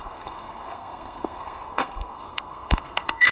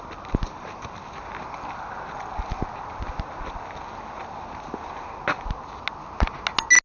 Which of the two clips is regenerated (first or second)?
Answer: first